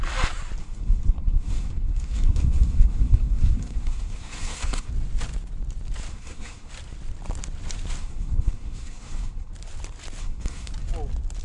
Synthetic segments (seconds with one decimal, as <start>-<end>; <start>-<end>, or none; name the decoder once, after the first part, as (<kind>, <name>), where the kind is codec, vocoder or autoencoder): 0.6-4.9 (codec, SNAC); 6.1-6.7; 8.0-9.5; 10.2-10.7